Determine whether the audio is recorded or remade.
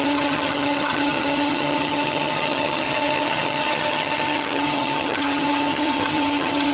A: remade